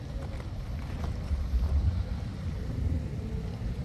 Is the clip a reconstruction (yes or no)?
yes